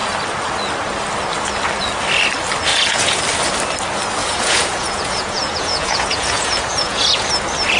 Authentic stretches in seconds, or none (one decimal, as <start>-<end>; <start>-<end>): 0.0-2.7; 3.2-4.2; 7.3-7.8